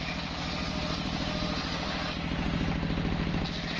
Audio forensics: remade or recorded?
recorded